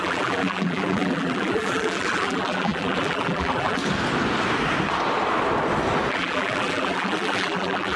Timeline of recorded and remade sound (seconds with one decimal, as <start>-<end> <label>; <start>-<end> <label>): 0.0-3.8 remade; 3.8-6.1 recorded; 6.1-8.0 remade